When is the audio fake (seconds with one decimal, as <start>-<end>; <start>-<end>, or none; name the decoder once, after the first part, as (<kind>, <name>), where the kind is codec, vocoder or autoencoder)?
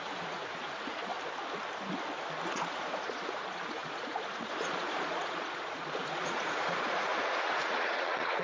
0.0-1.1 (vocoder, Vocos); 2.5-8.4